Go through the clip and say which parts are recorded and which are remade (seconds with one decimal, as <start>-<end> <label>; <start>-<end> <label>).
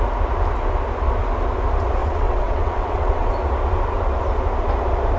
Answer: 0.0-2.0 recorded; 2.0-3.3 remade; 3.3-5.2 recorded